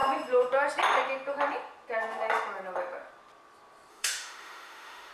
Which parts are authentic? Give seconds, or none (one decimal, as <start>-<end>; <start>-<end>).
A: 0.0-3.9